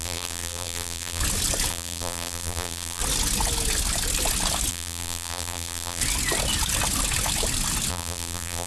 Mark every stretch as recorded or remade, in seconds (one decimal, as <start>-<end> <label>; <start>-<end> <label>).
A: 0.0-1.2 remade; 1.2-1.7 recorded; 1.7-3.0 remade; 3.0-4.7 recorded; 4.7-6.0 remade; 6.0-7.9 recorded; 7.9-8.7 remade